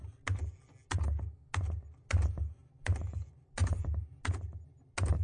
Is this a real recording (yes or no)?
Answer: yes